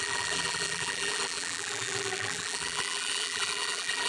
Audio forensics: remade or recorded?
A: remade